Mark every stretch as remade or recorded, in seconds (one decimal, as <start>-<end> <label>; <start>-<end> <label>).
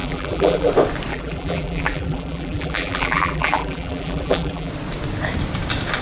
0.0-0.7 remade; 0.7-1.1 recorded; 1.1-4.7 remade; 4.7-6.0 recorded